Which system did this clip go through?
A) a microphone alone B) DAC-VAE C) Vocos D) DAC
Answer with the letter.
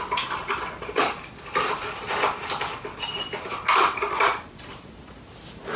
A